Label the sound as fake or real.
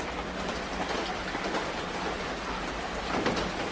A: real